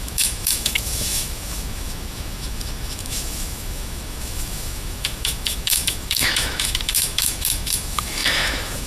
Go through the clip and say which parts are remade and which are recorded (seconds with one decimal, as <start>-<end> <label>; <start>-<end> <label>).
0.0-8.9 remade